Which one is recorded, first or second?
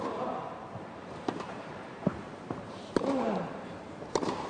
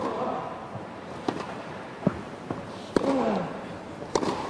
second